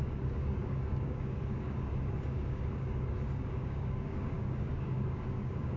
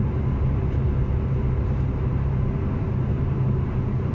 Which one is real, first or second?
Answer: second